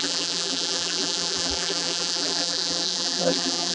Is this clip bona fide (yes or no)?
no